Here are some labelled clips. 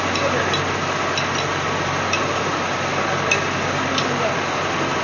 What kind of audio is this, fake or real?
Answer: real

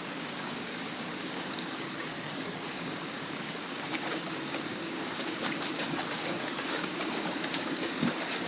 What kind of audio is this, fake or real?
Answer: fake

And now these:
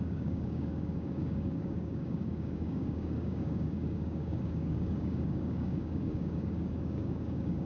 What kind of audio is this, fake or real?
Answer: fake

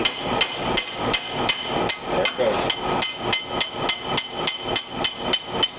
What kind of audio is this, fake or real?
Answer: real